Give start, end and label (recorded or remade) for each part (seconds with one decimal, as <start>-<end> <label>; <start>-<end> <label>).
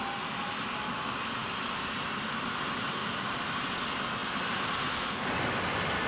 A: 0.0-3.0 recorded; 3.0-3.7 remade; 3.7-6.1 recorded